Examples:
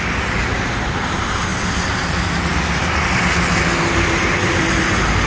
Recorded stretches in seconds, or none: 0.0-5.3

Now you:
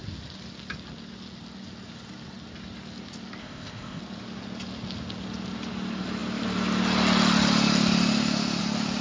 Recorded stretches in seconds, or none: 0.0-3.4; 4.0-9.0

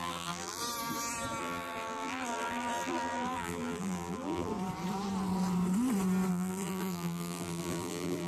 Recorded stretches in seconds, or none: 0.6-1.4; 4.5-6.3

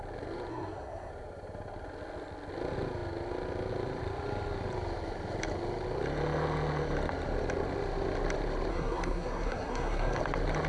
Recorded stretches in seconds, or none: 0.0-0.5; 1.1-8.7; 10.2-10.7

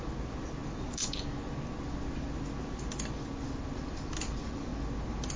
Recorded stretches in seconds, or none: 0.0-5.4

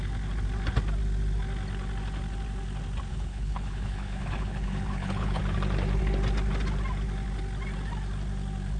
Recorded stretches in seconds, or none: 0.0-3.1; 5.4-8.8

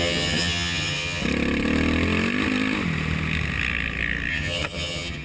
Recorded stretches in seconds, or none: 1.2-4.3

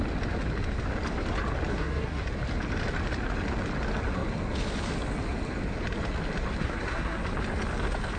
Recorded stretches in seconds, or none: 0.0-1.7; 2.2-6.6; 7.2-8.2